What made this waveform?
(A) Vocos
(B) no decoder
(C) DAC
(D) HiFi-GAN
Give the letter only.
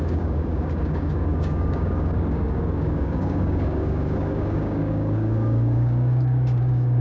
C